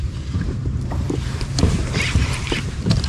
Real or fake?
fake